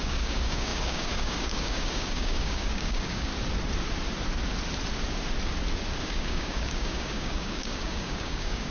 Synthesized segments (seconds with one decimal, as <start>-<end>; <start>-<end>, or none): 0.0-3.3; 6.0-8.7